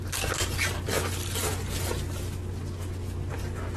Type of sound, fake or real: real